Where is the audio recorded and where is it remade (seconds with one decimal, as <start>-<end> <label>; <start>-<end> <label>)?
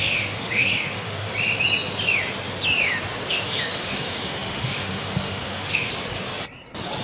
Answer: 0.0-1.3 remade; 1.3-3.3 recorded; 3.3-5.9 remade; 5.9-7.0 recorded